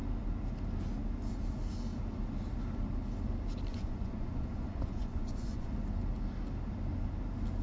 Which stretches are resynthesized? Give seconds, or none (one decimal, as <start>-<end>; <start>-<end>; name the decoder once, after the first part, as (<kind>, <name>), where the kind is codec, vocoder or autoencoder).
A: 3.7-5.7 (vocoder, Vocos)